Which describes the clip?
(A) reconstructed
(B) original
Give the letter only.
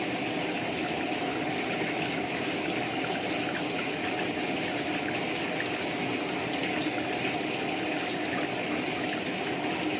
B